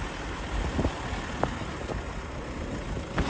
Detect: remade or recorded recorded